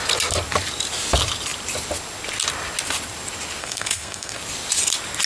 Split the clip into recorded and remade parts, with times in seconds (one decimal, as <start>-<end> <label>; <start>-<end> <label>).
0.0-3.6 recorded; 3.6-4.4 remade; 4.4-5.3 recorded